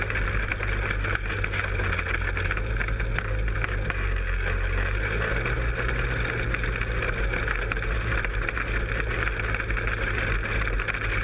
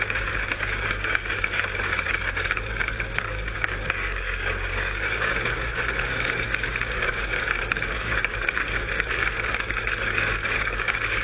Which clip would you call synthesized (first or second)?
second